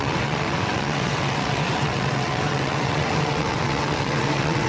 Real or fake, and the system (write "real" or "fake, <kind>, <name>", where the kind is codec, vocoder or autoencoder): fake, vocoder, WaveNeXt